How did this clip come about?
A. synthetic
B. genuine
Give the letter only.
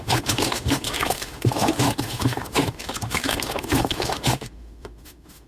A